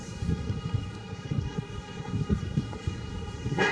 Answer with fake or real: fake